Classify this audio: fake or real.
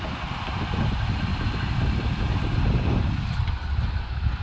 real